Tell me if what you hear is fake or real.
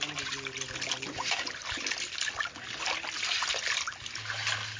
real